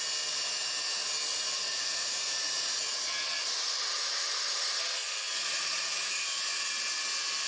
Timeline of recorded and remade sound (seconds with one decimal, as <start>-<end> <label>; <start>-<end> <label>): 0.0-1.3 recorded; 1.3-3.0 remade; 3.0-5.0 recorded; 5.0-6.7 remade; 6.7-7.5 recorded